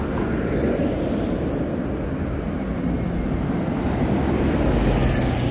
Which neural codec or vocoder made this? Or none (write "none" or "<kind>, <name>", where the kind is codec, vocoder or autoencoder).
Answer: none